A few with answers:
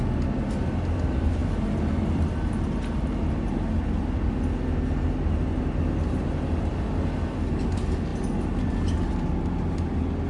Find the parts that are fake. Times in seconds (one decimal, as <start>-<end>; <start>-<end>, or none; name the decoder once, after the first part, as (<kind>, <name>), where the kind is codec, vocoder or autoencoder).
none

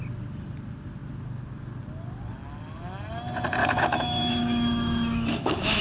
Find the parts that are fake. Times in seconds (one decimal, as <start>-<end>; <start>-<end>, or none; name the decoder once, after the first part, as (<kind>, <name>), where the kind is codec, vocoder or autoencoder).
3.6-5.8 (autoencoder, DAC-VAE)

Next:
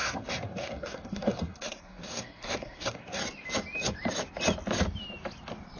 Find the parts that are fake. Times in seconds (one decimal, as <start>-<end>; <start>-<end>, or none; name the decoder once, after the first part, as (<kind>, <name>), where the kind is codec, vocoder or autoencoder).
0.0-3.2 (codec, SNAC)